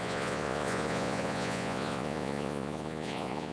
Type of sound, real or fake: fake